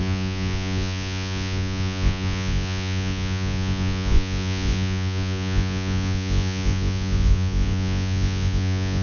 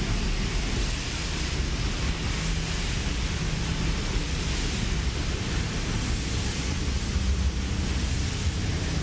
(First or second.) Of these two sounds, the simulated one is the first